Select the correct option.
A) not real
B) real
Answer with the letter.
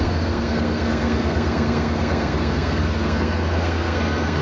A